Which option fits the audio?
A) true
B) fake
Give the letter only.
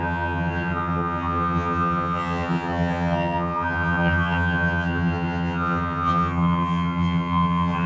B